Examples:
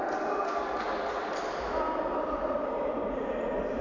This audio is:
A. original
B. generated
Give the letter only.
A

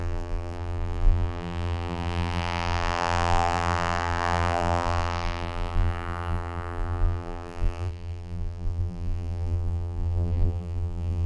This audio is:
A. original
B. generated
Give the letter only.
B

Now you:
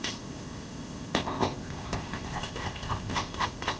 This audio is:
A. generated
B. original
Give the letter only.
A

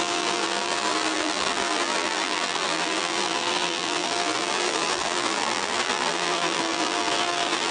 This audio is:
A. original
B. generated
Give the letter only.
B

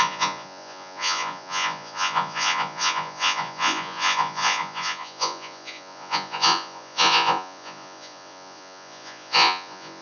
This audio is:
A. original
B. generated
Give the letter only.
B